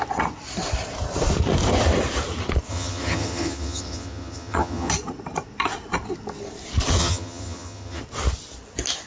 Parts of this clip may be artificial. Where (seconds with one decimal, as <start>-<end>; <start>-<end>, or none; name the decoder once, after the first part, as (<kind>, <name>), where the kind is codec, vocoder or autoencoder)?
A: 2.7-4.9 (vocoder, HiFi-GAN); 7.0-8.0